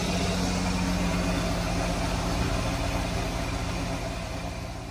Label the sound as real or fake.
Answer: real